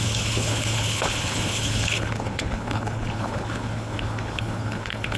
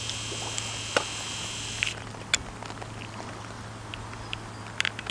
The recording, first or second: second